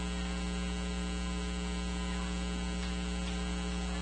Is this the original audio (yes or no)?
yes